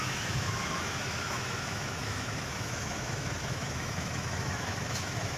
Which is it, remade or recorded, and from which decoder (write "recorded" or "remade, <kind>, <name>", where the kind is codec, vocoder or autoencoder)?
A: remade, autoencoder, DAC-VAE